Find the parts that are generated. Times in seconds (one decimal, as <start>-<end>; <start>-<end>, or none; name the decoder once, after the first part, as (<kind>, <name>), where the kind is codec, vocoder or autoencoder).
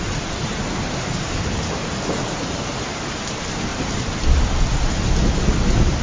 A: 0.4-3.2 (vocoder, BigVGAN v2)